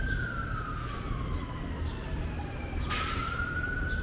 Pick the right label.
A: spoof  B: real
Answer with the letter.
B